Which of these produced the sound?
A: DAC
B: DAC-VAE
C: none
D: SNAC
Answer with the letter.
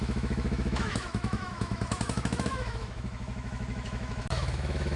B